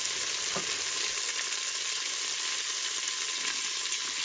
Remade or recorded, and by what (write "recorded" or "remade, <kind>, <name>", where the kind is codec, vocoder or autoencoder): recorded